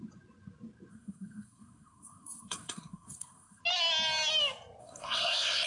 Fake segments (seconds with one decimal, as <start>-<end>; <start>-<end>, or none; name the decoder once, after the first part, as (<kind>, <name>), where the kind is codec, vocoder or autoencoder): 0.9-3.6 (codec, SNAC); 4.8-5.7